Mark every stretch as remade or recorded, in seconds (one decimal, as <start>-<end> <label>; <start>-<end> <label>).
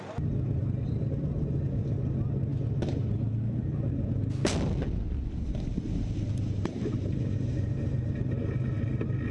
0.0-0.6 recorded; 0.6-1.6 remade; 1.6-6.6 recorded; 6.6-8.1 remade; 8.1-9.3 recorded